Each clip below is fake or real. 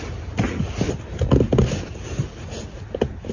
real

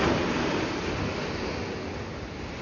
real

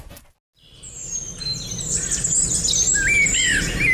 real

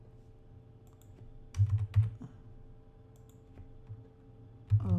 real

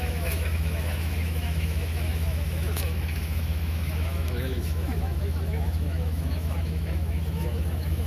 fake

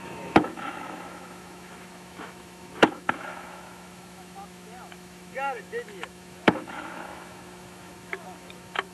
fake